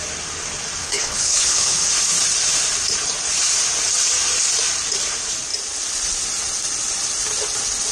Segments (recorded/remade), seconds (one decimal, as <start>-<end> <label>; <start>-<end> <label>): 0.0-0.8 recorded; 0.8-1.9 remade; 1.9-7.9 recorded